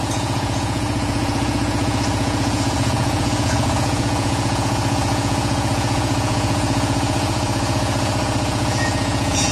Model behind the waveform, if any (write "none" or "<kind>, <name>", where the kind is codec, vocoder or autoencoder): vocoder, Vocos